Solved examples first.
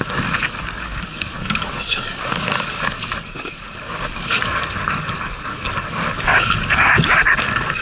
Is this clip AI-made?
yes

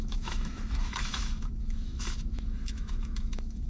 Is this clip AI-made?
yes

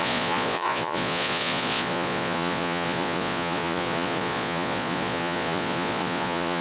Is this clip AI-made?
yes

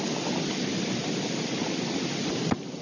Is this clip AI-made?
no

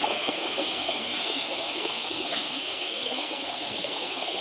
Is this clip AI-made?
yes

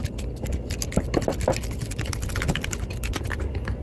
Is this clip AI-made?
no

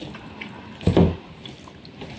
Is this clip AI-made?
no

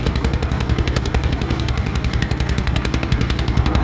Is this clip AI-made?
yes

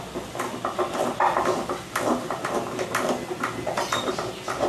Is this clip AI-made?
no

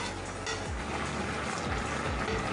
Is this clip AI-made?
no